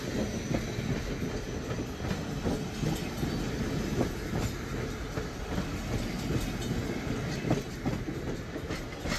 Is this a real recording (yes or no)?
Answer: yes